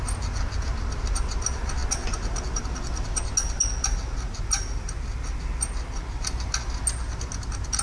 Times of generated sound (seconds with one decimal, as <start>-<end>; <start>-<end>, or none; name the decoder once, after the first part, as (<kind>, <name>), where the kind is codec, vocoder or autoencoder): none